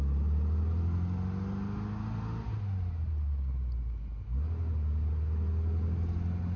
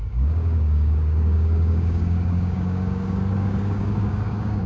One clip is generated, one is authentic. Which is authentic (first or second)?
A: first